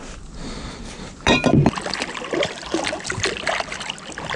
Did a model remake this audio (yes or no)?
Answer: no